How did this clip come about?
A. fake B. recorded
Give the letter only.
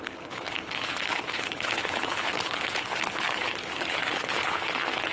A